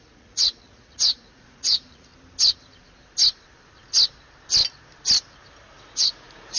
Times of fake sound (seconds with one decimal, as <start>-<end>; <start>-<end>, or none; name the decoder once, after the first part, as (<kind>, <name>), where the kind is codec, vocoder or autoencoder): 0.0-2.1 (vocoder, Vocos); 5.8-6.6